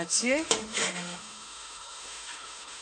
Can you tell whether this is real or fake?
fake